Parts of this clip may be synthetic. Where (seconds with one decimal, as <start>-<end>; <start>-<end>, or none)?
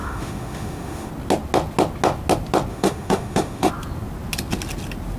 0.0-1.1; 2.7-3.7